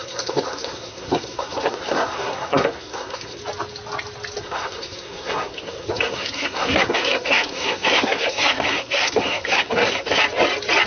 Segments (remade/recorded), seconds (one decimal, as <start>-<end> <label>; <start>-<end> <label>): 0.0-3.4 remade; 3.4-4.4 recorded; 4.4-10.2 remade; 10.2-10.9 recorded